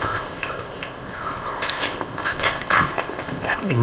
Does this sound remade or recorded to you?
remade